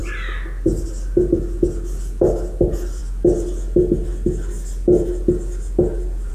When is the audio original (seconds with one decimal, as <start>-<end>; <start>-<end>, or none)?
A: 0.0-6.3